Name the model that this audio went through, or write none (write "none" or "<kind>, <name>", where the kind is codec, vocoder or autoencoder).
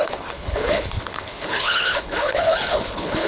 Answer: codec, HILCodec